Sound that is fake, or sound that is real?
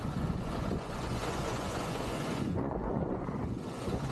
fake